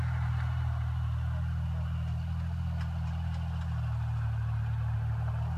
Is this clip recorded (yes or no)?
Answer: yes